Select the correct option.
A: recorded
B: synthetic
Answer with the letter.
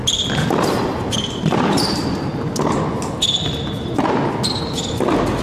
A